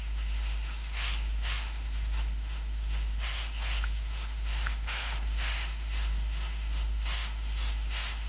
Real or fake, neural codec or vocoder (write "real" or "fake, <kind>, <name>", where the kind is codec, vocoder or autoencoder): fake, autoencoder, DAC-VAE